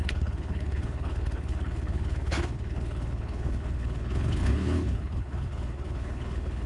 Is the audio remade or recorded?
remade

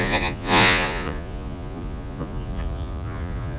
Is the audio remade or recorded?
remade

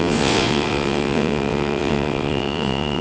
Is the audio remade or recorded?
remade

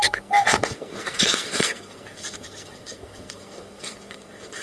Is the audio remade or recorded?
remade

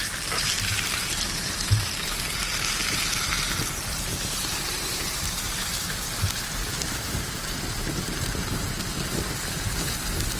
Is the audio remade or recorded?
remade